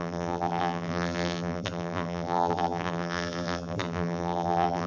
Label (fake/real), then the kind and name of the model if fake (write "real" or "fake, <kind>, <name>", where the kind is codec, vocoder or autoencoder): fake, vocoder, BigVGAN v2